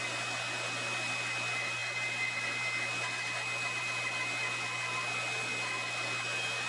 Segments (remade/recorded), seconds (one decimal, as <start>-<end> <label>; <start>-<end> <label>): 0.0-6.7 recorded